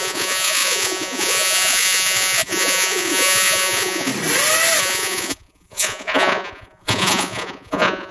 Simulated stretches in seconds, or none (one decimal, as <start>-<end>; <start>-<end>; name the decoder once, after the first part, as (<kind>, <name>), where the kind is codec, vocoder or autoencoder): 0.0-4.1 (vocoder, Vocos); 4.8-8.1